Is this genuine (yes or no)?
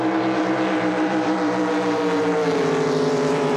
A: no